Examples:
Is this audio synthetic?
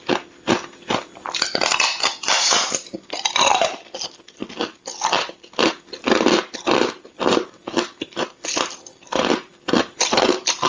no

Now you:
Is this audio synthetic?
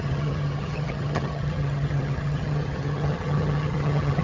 yes